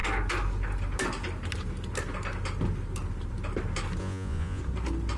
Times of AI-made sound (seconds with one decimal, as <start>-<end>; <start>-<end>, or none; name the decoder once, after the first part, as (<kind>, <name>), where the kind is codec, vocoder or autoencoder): 4.0-4.6 (vocoder, Vocos)

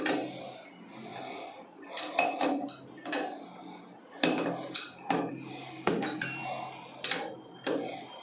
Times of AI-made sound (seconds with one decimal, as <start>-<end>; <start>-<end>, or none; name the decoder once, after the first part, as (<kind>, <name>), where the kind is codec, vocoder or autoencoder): none